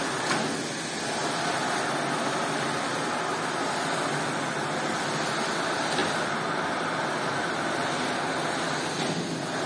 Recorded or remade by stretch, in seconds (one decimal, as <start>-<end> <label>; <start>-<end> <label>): 0.0-9.7 recorded